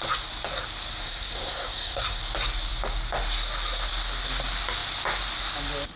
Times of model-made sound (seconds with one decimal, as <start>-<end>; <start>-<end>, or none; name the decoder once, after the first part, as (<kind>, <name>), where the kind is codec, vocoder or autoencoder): 1.0-2.2 (codec, SNAC)